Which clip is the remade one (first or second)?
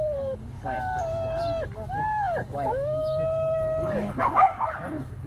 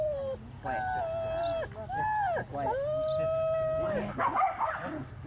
first